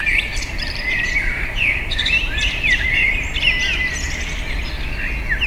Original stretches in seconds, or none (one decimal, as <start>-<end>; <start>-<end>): 3.3-5.5